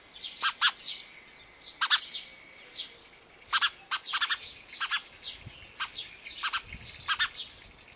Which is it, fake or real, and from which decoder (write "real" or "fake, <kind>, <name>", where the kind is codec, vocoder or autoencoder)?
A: real